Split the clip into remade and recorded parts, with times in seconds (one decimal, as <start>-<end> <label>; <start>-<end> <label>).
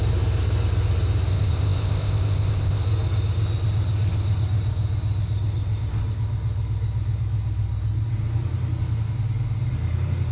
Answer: 0.0-1.3 recorded; 1.3-2.8 remade; 2.8-10.3 recorded